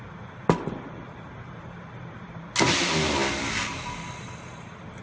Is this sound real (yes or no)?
yes